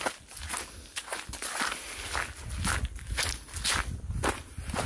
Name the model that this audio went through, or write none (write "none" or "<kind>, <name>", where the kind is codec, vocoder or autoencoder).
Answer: none